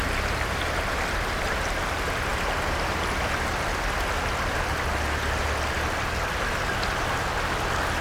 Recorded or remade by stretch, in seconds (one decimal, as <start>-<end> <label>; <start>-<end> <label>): 0.0-8.0 recorded